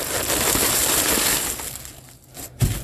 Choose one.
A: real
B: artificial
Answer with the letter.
A